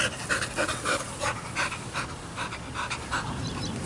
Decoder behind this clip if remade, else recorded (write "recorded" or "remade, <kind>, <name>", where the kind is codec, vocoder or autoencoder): recorded